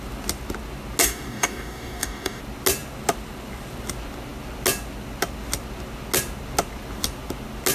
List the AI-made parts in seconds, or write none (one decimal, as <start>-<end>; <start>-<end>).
1.0-2.4